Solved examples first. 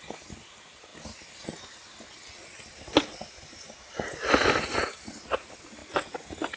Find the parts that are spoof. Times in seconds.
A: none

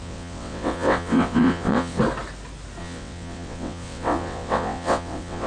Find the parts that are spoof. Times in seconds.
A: 0.0-2.0 (vocoder, WaveNeXt); 2.8-5.5